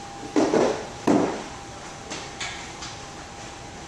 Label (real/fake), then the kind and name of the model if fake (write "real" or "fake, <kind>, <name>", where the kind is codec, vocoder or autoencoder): fake, vocoder, BigVGAN v2